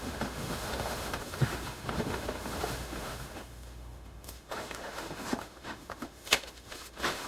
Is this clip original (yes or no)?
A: no